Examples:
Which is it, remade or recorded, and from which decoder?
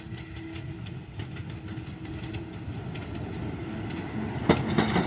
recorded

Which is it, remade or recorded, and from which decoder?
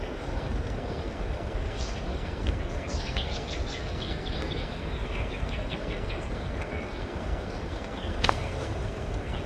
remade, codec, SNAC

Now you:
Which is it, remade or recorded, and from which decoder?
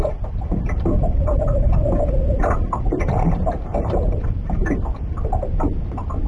remade, vocoder, BigVGAN v2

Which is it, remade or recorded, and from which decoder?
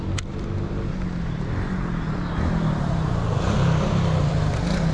recorded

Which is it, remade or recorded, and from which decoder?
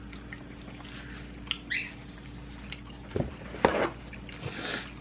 recorded